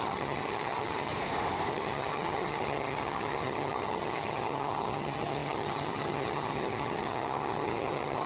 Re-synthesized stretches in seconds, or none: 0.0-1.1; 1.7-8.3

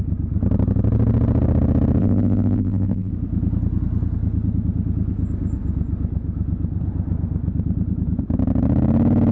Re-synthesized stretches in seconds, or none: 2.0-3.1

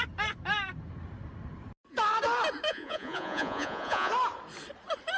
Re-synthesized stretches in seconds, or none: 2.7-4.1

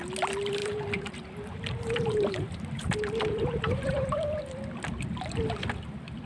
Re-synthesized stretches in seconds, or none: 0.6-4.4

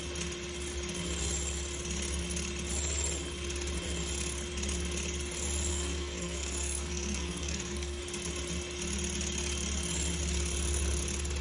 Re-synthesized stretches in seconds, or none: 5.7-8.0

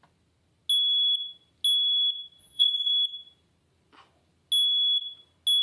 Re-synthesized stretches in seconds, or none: 2.4-2.9

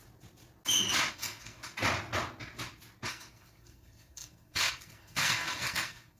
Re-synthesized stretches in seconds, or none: 1.1-1.6; 3.1-6.2

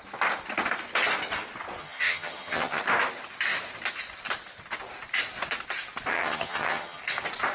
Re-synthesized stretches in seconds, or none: 1.8-2.8; 6.1-7.0